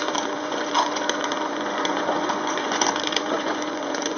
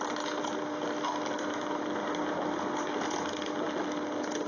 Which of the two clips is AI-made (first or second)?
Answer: first